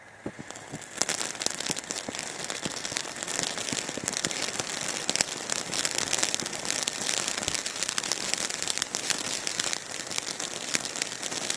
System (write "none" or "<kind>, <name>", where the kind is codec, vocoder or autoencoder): none